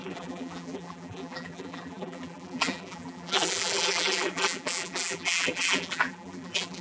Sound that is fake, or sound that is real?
fake